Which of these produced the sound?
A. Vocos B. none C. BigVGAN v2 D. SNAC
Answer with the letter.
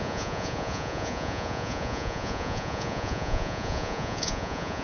A